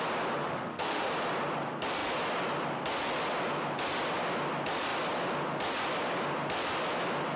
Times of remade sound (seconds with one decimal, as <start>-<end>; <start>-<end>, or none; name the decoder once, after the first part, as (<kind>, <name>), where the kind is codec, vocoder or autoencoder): 0.4-1.1 (autoencoder, DAC-VAE)